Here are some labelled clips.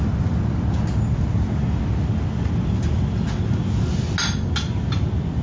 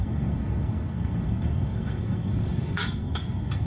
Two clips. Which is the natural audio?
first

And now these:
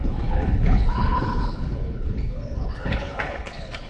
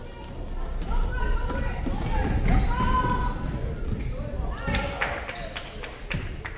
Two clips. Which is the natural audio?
second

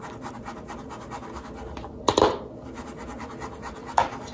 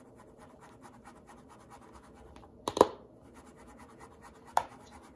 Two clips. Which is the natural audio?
first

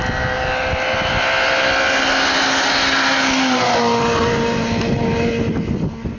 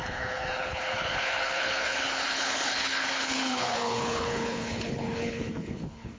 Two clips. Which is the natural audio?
first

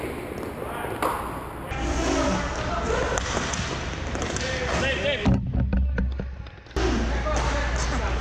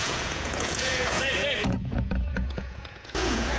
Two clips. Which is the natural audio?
first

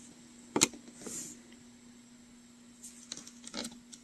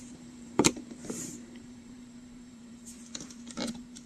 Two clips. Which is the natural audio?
first